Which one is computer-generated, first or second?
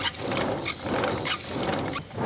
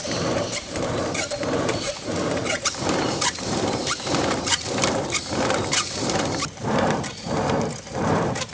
second